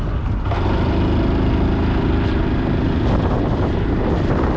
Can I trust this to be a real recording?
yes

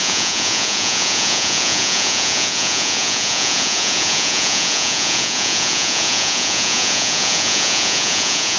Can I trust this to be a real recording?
no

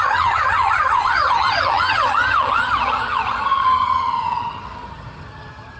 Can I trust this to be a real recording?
no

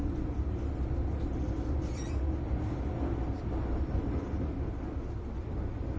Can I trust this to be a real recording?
yes